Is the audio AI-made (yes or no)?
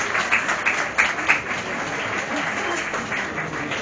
no